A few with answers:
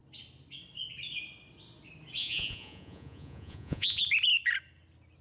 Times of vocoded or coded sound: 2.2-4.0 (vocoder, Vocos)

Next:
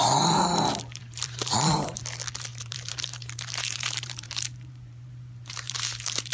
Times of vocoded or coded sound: 1.0-2.0 (vocoder, BigVGAN v2); 2.5-6.3

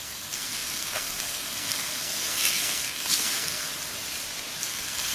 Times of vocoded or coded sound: 0.0-3.7 (codec, SNAC); 4.6-5.1

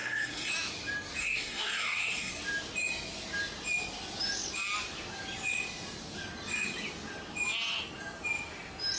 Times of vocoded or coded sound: 0.0-0.5 (codec, SNAC); 1.2-2.3

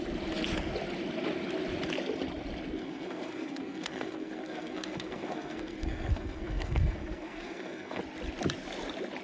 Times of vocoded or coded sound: 2.8-8.0 (codec, SNAC)

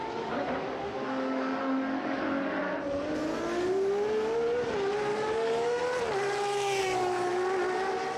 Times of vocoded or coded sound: 0.0-2.6 (codec, DAC); 5.1-5.8; 6.8-7.3

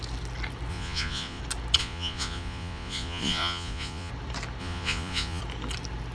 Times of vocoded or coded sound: 0.7-1.4 (vocoder, Vocos); 1.8-4.1; 4.6-5.4